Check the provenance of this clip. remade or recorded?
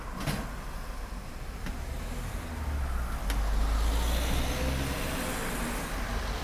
recorded